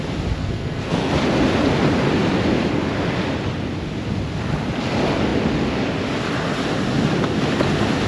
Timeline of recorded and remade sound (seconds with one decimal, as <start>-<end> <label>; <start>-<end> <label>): 0.0-0.4 recorded; 0.4-1.1 remade; 1.1-8.1 recorded